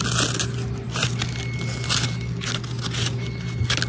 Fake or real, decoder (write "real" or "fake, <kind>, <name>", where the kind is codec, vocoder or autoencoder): real